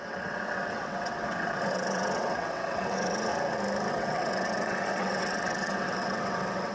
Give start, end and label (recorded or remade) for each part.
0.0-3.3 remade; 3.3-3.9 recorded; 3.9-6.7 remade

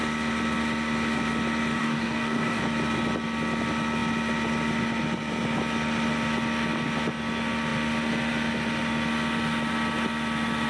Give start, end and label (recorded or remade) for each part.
0.0-1.8 recorded; 1.8-2.6 remade; 2.6-10.7 recorded

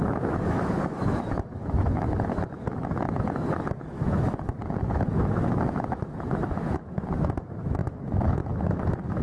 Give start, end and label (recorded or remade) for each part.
0.0-9.2 remade

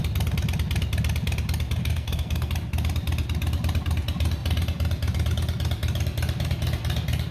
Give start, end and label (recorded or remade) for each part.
0.0-1.8 recorded; 1.8-2.5 remade; 2.5-7.3 recorded

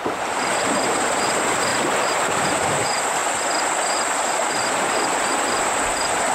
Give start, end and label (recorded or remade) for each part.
0.0-3.2 remade; 3.2-4.1 recorded; 4.1-6.3 remade

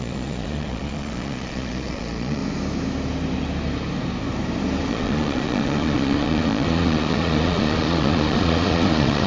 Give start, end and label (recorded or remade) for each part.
0.0-2.4 remade; 2.4-4.9 recorded; 4.9-9.3 remade